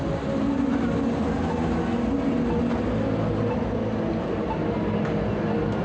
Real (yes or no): yes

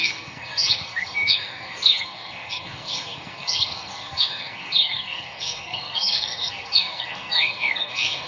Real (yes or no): no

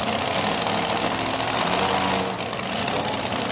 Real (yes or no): yes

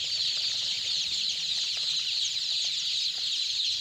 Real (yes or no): yes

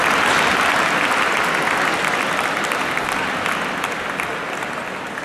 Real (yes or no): yes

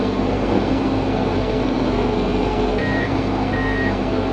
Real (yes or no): no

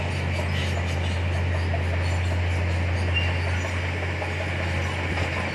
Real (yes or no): yes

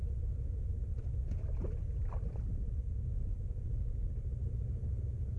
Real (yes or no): yes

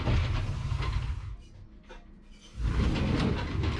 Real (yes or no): yes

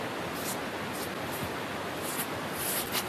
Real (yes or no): yes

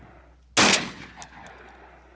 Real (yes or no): yes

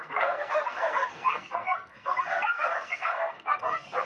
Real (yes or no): no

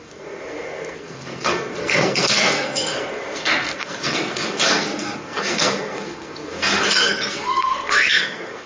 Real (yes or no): no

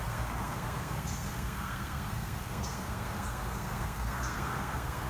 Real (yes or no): no